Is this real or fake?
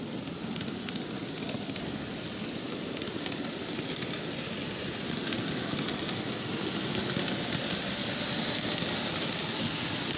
real